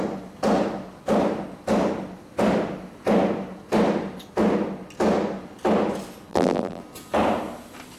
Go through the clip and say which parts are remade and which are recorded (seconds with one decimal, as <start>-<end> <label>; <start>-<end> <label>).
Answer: 0.0-6.3 recorded; 6.3-6.8 remade; 6.8-8.0 recorded